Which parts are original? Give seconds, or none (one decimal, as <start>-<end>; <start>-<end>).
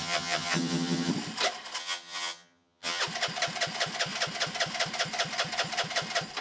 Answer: 1.1-1.8; 3.0-6.4